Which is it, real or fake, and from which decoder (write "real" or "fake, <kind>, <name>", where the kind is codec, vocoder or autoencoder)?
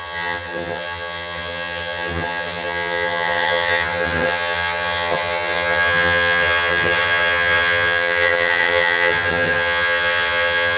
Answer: fake, vocoder, HiFi-GAN